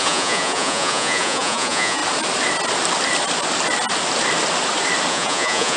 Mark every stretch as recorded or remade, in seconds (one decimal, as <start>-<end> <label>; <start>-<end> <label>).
0.0-2.0 remade; 2.0-5.1 recorded; 5.1-5.8 remade